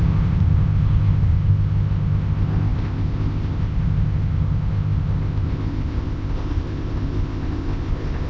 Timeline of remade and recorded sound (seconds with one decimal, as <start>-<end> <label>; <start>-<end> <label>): 0.0-8.3 remade